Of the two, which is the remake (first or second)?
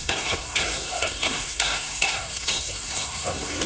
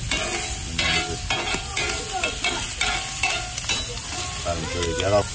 first